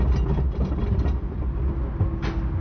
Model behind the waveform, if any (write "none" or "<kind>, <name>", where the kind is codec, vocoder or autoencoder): none